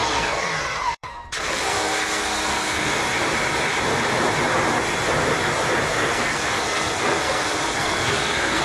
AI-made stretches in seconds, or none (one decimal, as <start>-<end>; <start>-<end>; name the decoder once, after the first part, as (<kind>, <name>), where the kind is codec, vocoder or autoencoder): 0.0-3.0 (codec, SNAC); 5.9-8.6